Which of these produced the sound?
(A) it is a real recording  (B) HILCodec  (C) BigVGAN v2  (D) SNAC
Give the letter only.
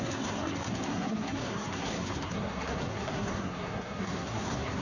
D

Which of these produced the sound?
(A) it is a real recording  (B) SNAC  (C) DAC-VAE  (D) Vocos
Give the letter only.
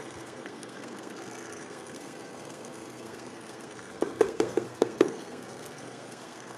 B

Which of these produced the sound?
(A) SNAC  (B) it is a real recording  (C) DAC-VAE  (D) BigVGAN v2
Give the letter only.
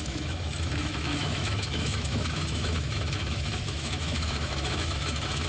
C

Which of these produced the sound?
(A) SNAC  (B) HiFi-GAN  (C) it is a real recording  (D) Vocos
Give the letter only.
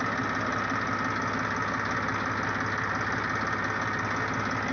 C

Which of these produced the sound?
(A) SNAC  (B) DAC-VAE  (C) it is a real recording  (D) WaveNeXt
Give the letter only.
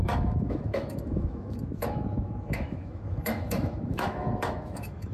B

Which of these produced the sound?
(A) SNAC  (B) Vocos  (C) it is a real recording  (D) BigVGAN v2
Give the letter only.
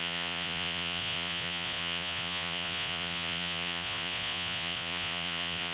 B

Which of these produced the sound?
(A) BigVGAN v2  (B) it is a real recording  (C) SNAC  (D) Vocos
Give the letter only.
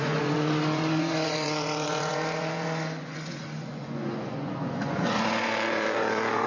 D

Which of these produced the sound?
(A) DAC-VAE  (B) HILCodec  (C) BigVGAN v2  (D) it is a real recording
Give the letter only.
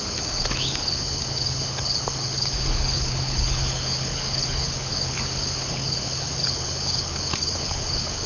B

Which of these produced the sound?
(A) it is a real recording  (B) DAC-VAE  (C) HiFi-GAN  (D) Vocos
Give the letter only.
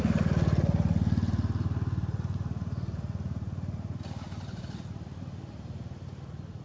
A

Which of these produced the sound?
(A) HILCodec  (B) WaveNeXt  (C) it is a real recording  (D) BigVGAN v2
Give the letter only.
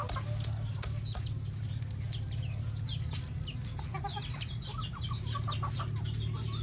C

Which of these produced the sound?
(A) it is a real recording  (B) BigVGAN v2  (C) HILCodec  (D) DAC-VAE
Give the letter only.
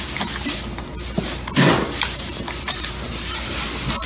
B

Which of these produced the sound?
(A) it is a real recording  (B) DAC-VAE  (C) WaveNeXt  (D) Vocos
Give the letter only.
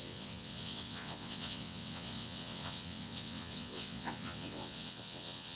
C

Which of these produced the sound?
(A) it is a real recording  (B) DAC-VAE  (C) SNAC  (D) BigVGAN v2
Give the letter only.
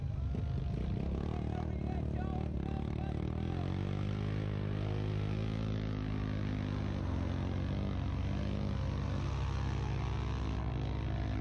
A